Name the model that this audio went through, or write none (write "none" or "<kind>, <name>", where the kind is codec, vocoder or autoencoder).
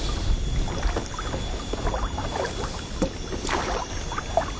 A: none